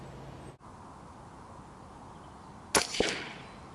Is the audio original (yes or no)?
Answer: yes